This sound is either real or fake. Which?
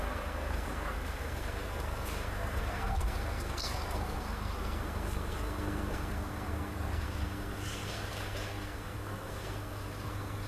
fake